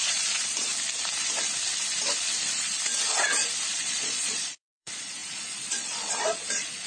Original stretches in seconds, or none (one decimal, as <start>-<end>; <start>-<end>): 0.7-3.7